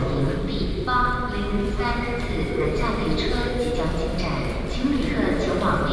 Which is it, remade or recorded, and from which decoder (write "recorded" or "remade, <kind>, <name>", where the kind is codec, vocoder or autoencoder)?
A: recorded